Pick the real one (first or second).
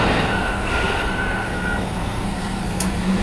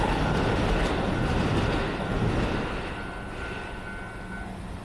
second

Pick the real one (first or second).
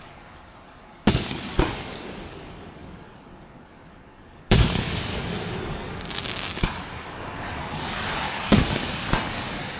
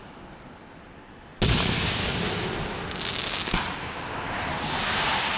second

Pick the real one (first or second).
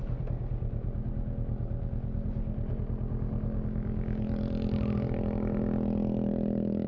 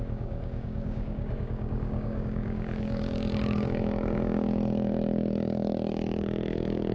first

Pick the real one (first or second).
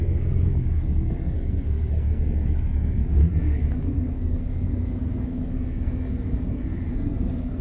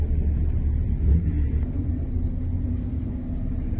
second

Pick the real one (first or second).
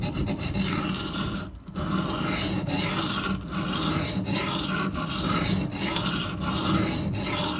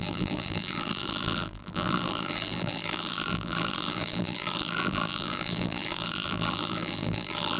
first